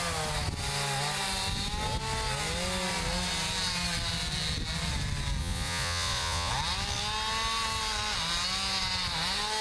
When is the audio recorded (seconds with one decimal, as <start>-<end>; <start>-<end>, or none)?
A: 0.0-5.4; 6.5-9.6